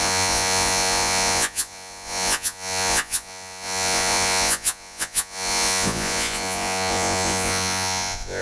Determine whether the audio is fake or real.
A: fake